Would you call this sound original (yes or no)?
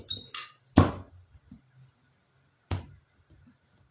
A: yes